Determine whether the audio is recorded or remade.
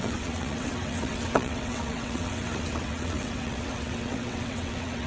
remade